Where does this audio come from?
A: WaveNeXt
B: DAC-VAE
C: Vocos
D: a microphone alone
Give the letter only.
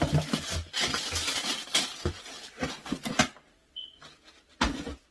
D